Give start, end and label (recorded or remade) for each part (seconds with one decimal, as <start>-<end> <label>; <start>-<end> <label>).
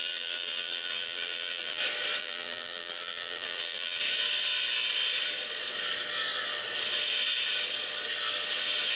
0.0-1.8 remade; 1.8-2.2 recorded; 2.2-4.0 remade; 4.0-9.0 recorded